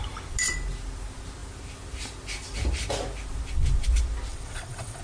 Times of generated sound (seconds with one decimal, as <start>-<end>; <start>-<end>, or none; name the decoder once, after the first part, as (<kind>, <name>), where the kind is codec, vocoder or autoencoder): 4.3-5.0 (vocoder, WaveNeXt)

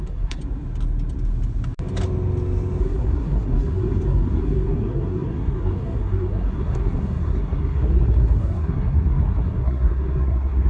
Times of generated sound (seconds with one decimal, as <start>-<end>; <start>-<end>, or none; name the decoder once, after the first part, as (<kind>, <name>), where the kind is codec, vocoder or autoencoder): 0.0-0.4 (codec, SNAC); 2.8-10.7

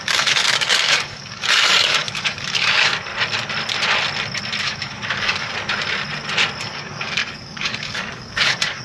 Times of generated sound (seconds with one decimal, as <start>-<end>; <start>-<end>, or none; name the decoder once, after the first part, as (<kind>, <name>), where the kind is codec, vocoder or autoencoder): 0.0-3.1 (codec, DAC); 4.6-5.5; 6.6-8.8

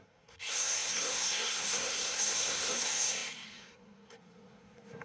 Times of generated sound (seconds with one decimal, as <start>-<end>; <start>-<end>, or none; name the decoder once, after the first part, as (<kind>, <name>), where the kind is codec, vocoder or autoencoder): 0.0-5.0 (codec, SNAC)

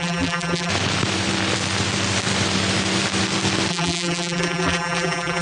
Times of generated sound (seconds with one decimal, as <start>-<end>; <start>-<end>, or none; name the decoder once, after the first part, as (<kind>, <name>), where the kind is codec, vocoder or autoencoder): 0.0-0.7 (vocoder, BigVGAN v2); 3.7-5.4

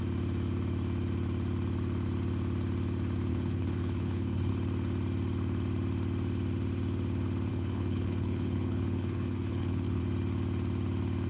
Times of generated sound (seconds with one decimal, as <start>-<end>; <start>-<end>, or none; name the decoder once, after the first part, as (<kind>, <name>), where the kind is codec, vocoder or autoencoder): 3.3-4.5 (codec, HILCodec); 7.5-10.0